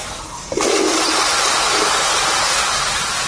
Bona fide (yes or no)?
yes